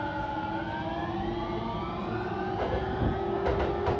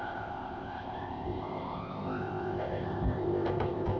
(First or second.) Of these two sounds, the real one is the first